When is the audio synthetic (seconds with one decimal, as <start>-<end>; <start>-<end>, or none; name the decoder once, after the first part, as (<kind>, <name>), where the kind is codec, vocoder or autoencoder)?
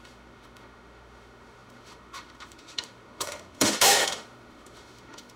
0.0-5.4 (autoencoder, DAC-VAE)